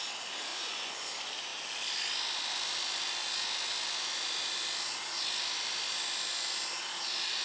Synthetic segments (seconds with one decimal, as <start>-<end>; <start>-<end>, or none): 0.5-1.1